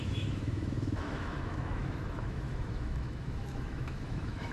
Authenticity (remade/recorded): remade